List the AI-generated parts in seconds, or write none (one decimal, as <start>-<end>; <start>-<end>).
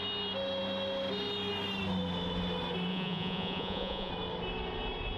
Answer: 2.9-4.1